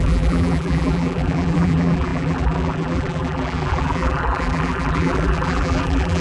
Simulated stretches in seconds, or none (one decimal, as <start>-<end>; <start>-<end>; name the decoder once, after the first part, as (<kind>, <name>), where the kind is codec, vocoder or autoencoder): 0.0-6.2 (vocoder, BigVGAN v2)